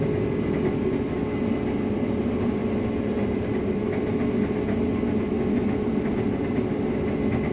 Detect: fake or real real